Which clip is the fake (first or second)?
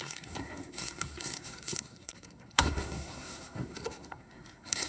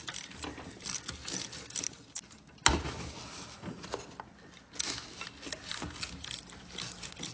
first